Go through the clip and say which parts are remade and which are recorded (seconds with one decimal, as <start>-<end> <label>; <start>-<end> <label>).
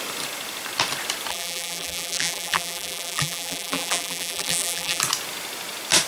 0.0-1.3 recorded; 1.3-5.0 remade; 5.0-6.1 recorded